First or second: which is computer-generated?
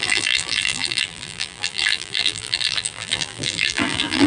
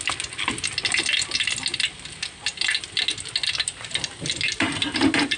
first